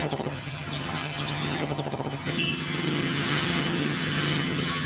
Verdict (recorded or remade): remade